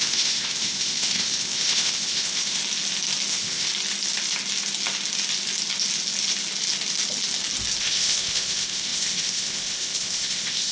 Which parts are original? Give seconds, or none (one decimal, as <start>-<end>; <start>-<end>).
2.6-3.3; 3.7-7.8